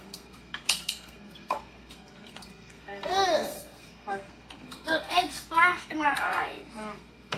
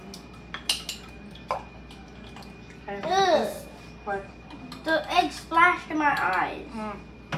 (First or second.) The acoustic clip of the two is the second